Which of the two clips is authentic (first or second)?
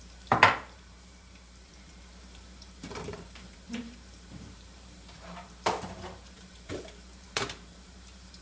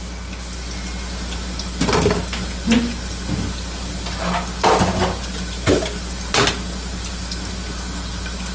second